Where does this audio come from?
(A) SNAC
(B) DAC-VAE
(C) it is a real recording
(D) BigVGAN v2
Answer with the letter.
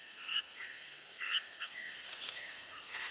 A